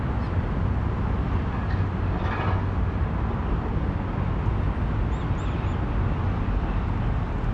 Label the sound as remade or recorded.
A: recorded